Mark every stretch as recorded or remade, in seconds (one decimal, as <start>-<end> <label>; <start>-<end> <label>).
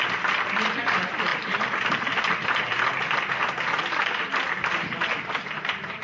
0.0-6.0 recorded